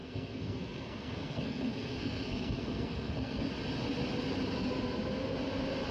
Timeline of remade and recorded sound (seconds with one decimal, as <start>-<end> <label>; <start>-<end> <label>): 0.0-3.5 remade; 3.5-5.9 recorded